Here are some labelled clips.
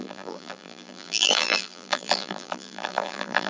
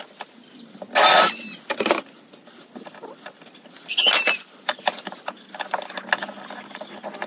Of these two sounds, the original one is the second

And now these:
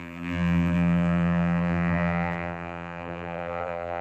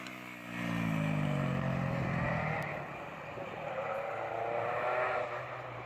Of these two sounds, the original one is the second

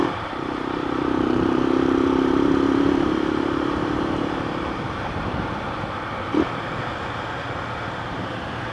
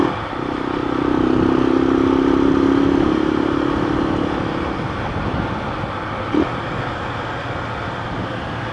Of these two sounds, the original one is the second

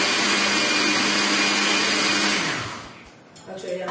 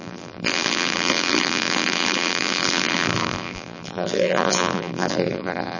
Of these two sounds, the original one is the first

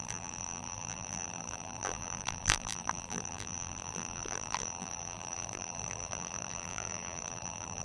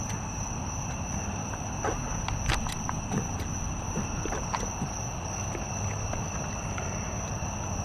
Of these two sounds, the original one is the second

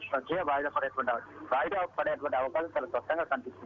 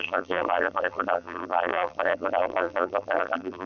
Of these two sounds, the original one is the first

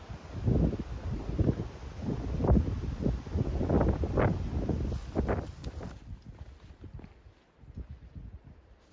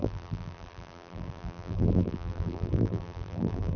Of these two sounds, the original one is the first